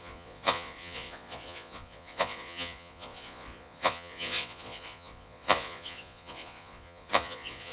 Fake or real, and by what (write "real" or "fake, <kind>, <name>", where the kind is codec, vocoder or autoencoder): fake, vocoder, Vocos